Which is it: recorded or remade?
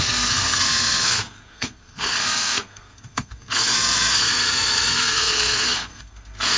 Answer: remade